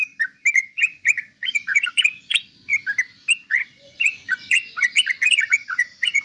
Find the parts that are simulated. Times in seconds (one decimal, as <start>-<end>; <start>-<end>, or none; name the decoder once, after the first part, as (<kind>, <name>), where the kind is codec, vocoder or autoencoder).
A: 0.5-2.7 (vocoder, Vocos); 3.4-6.2